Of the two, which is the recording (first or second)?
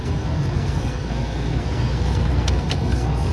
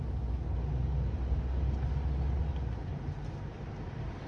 second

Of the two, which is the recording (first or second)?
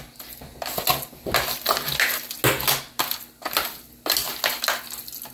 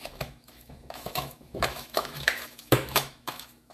first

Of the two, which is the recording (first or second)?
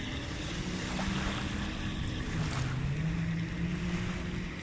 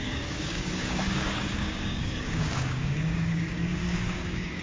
first